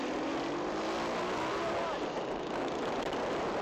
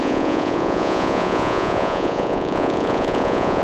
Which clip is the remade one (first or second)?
second